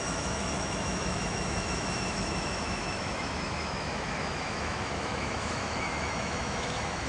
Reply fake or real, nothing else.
fake